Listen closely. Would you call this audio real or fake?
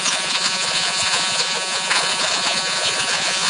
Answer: fake